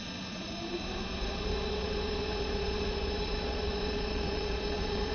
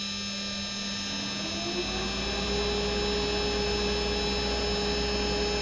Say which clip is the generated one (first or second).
first